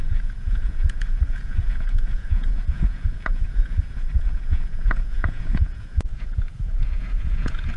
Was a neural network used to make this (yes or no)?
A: yes